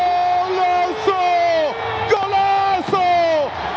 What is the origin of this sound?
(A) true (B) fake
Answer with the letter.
A